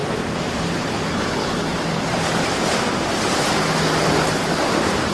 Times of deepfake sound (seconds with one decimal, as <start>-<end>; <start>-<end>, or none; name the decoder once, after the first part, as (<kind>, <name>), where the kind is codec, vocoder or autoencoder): 1.1-1.7 (codec, HILCodec)